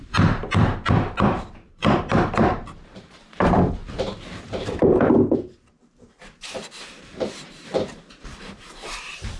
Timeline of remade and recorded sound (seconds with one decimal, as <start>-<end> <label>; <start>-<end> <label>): 0.0-3.8 remade; 3.8-6.9 recorded; 6.9-9.4 remade